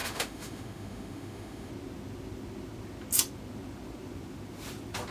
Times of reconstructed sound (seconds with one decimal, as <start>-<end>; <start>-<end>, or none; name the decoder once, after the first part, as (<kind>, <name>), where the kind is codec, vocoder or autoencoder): 0.0-1.7 (autoencoder, DAC-VAE)